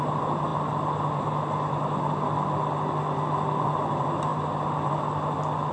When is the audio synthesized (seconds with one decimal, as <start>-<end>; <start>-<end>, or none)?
none